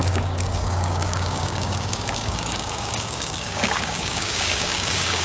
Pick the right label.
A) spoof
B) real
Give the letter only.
A